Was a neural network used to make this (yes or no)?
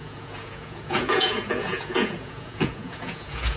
yes